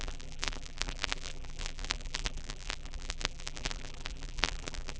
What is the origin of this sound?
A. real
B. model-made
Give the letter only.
B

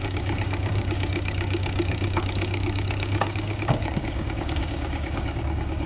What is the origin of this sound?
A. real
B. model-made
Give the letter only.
B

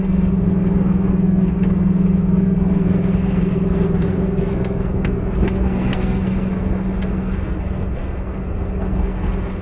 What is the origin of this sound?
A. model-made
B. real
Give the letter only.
A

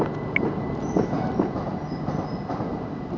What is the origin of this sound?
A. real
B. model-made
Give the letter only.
A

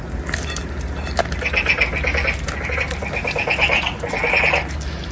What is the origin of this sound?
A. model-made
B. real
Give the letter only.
B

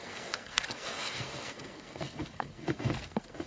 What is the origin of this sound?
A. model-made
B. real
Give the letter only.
A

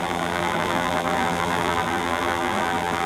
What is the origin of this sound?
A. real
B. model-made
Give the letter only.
B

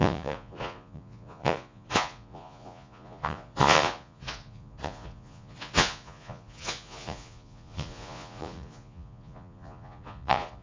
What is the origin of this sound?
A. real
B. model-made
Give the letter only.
B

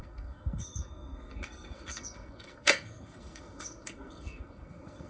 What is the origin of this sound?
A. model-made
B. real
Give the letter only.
A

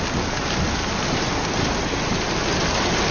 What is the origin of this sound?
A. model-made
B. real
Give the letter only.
B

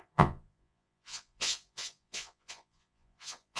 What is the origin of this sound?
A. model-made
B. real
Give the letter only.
A